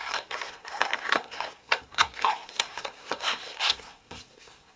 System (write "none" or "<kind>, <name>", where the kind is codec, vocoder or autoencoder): codec, SNAC